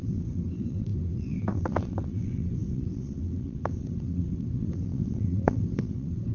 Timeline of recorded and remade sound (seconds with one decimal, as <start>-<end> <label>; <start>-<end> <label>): 0.0-6.3 remade